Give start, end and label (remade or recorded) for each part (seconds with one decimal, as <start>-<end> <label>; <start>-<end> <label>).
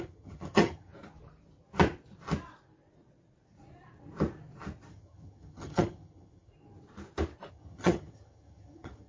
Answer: 0.0-0.9 remade; 0.9-4.9 recorded; 4.9-6.5 remade; 6.5-7.5 recorded; 7.5-9.1 remade